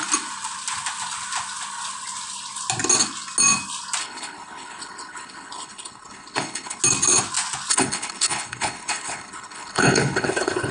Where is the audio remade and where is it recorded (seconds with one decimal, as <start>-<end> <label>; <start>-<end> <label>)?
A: 0.0-4.0 recorded; 4.0-6.8 remade; 6.8-7.7 recorded; 7.7-10.7 remade